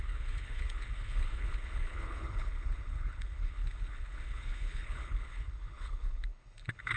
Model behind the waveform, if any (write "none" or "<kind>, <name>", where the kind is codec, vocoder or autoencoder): codec, HILCodec